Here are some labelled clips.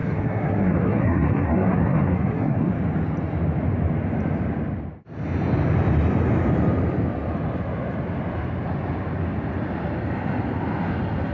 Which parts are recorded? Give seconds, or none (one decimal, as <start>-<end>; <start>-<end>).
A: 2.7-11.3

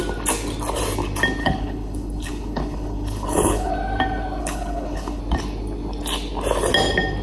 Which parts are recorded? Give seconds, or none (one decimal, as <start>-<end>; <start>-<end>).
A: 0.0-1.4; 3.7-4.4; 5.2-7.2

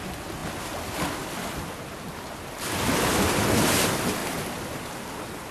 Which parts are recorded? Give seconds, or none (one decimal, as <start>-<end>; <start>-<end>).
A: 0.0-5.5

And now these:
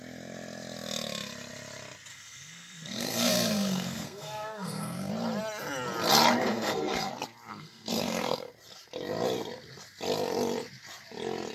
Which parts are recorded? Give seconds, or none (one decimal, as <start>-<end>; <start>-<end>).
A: 0.0-2.1; 5.1-6.4; 7.1-7.5; 8.5-11.5

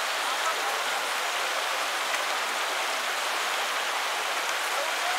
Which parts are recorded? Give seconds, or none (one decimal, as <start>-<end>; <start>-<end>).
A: 0.0-5.2